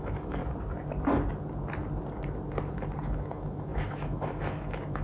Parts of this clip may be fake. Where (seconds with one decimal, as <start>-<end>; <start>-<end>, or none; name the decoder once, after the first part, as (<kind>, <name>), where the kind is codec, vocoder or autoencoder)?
0.0-0.4 (autoencoder, DAC-VAE); 3.0-5.0